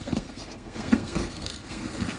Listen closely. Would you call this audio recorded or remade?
remade